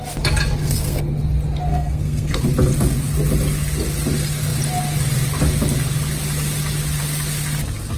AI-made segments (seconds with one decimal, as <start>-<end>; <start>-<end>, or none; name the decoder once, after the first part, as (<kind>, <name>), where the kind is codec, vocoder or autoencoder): 0.6-1.1 (codec, SNAC); 1.7-2.4